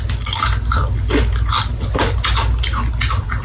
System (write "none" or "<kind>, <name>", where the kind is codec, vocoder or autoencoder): none